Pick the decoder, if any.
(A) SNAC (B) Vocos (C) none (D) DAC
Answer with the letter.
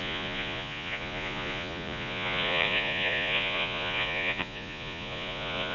B